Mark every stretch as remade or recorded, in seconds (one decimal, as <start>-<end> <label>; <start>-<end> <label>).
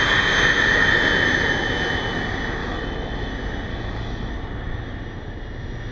0.0-2.6 recorded; 2.6-3.3 remade; 3.3-3.7 recorded; 3.7-4.3 remade; 4.3-5.9 recorded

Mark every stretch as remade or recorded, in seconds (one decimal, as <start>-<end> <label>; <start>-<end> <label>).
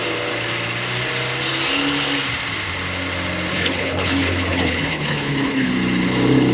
0.0-3.5 recorded; 3.5-5.7 remade; 5.7-6.5 recorded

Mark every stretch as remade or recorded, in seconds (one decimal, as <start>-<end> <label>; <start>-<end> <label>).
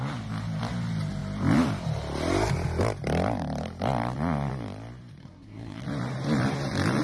0.0-5.2 recorded; 5.2-5.8 remade; 5.8-7.0 recorded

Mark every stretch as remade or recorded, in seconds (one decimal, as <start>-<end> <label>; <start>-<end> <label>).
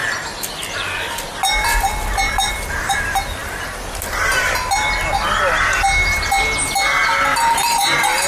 0.0-2.5 recorded; 2.5-3.4 remade; 3.4-7.4 recorded; 7.4-8.3 remade